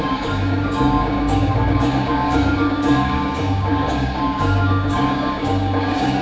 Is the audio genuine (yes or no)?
no